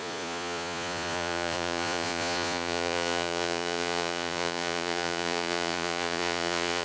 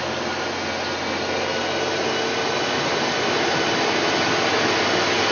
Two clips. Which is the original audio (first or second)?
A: second